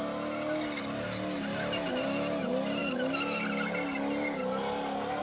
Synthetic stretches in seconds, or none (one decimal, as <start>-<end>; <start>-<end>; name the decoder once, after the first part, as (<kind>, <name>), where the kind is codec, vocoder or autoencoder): none